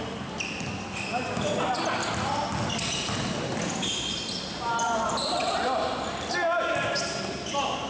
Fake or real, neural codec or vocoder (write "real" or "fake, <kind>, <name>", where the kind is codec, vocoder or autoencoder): real